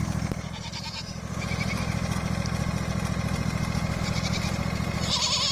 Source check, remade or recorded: recorded